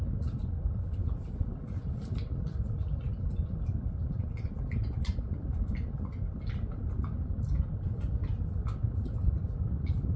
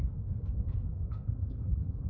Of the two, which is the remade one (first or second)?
second